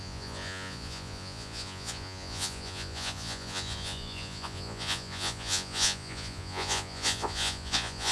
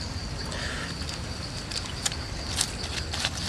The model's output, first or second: first